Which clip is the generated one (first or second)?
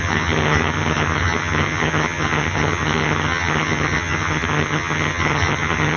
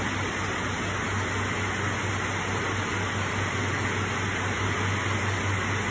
first